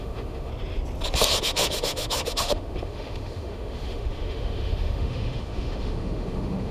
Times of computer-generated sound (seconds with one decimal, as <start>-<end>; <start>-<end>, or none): 0.0-0.5; 1.4-6.7